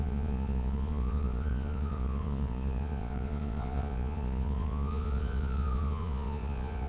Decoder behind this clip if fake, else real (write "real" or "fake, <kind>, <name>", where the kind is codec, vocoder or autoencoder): fake, vocoder, Vocos